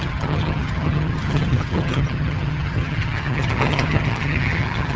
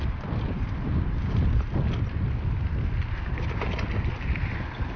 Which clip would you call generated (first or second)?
first